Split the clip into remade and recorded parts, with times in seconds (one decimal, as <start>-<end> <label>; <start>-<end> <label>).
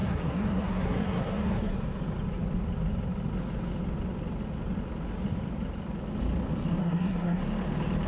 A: 0.0-1.7 remade; 1.7-6.8 recorded; 6.8-7.4 remade; 7.4-8.1 recorded